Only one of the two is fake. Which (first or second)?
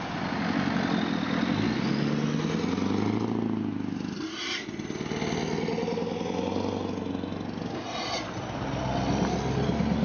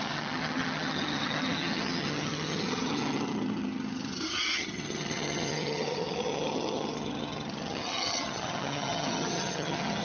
second